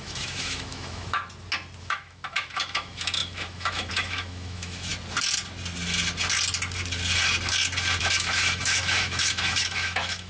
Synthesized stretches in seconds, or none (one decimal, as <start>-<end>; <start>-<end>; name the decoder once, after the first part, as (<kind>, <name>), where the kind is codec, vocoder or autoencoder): 0.0-1.2 (autoencoder, DAC-VAE); 1.8-4.9; 8.0-10.3